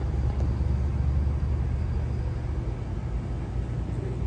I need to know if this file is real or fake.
real